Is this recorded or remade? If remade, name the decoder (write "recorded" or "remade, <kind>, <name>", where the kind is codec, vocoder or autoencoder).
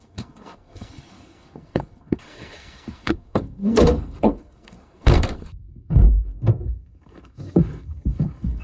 remade, codec, SNAC